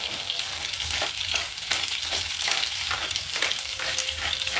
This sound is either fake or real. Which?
fake